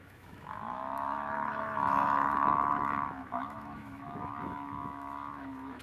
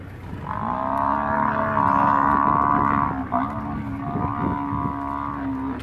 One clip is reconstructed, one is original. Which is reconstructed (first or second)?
first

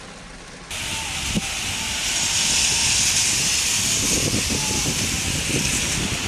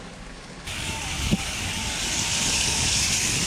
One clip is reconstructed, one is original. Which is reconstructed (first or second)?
second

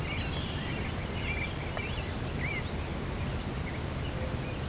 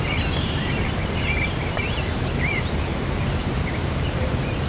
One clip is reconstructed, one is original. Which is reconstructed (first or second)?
second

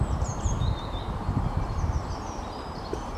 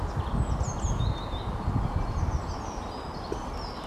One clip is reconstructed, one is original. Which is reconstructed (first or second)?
first